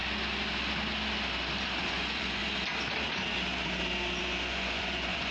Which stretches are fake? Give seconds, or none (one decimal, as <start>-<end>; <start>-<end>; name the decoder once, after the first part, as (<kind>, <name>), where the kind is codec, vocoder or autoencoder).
1.8-2.4 (vocoder, Vocos); 4.2-5.3